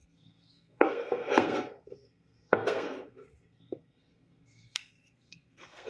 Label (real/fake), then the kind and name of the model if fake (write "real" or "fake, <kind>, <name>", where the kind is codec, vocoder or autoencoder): fake, codec, SNAC